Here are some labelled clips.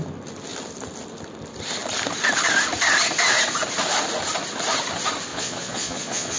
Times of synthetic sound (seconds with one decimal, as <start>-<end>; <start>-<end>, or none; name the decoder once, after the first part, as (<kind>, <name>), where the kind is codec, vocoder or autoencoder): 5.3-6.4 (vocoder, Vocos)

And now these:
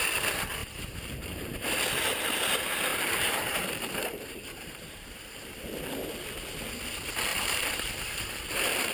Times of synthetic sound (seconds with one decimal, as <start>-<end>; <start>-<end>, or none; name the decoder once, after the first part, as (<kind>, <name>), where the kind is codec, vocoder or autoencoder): 0.6-2.4 (vocoder, BigVGAN v2); 2.9-6.0; 7.3-8.9

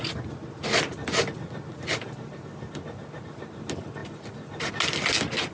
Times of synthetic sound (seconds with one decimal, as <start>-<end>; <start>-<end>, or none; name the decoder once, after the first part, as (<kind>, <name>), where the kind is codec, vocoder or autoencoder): none

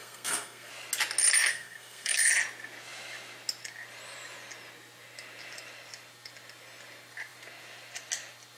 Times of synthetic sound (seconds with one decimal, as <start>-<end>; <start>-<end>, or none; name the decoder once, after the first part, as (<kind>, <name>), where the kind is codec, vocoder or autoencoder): 0.0-0.7 (codec, SNAC); 1.5-2.3

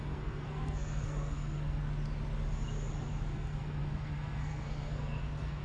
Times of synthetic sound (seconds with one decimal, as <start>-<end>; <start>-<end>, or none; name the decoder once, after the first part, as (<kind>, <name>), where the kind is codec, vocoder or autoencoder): 0.0-1.8 (codec, SNAC); 3.3-5.6

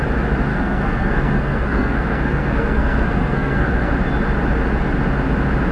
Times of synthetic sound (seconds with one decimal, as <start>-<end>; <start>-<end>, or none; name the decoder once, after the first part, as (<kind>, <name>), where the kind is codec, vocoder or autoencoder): 0.5-3.9 (codec, SNAC)